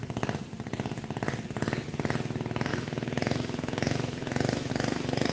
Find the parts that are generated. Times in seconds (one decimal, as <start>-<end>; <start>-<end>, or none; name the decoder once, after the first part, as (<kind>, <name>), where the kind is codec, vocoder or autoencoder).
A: 2.7-4.7 (autoencoder, DAC-VAE)